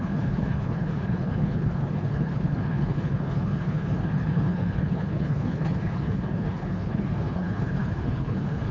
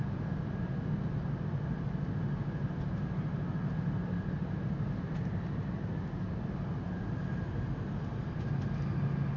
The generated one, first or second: first